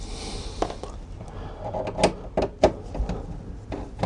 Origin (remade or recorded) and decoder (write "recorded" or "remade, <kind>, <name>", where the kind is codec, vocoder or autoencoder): recorded